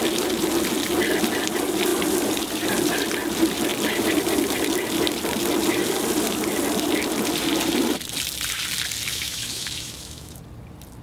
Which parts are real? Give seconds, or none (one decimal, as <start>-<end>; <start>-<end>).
0.0-9.1; 10.4-11.0